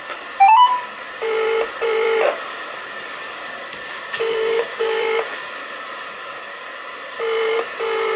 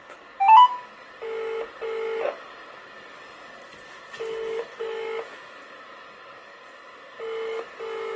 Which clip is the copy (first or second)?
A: first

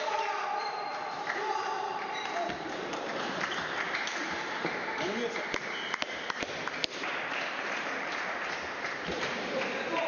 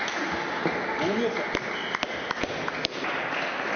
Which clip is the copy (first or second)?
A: first